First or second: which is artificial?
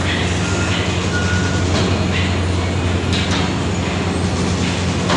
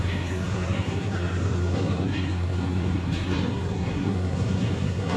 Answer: second